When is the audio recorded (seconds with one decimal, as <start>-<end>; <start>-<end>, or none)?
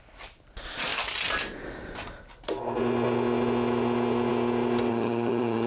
0.0-4.9